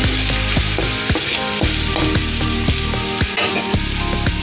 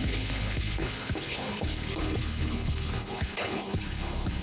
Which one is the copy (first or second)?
second